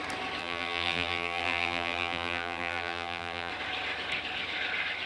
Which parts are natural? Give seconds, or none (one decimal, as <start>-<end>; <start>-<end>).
0.0-0.4; 3.5-5.1